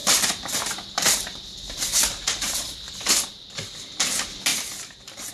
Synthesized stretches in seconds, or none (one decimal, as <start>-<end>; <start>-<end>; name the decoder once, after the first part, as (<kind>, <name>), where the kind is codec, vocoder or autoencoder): 0.0-3.1 (vocoder, BigVGAN v2); 4.5-5.3